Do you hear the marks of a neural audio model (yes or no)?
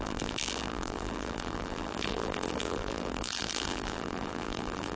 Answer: yes